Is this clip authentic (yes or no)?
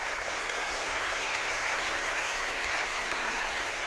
no